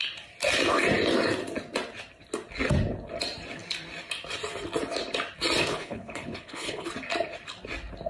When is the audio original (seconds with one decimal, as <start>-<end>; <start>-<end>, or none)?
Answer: 0.0-5.7; 6.9-8.1